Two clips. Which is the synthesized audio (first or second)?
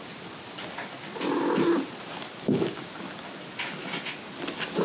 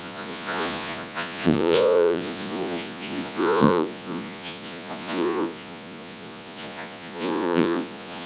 second